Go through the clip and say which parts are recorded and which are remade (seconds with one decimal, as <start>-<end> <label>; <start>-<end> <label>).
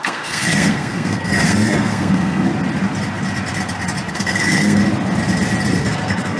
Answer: 0.0-2.5 remade; 2.5-4.1 recorded; 4.1-4.8 remade; 4.8-5.8 recorded; 5.8-6.4 remade